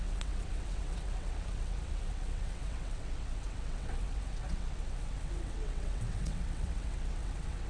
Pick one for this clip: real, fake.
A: fake